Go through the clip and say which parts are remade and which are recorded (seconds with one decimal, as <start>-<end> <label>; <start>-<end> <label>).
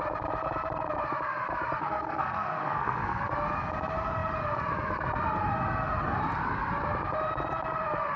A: 0.0-1.8 recorded; 1.8-3.2 remade; 3.2-8.2 recorded